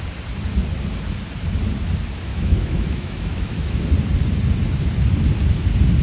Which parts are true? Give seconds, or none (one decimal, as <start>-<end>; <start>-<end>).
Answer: 0.0-2.3; 3.8-6.0